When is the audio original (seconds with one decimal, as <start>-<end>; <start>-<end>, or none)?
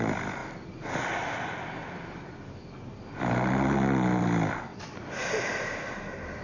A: 0.0-4.7; 6.0-6.4